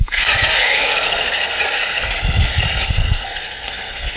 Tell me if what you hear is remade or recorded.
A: remade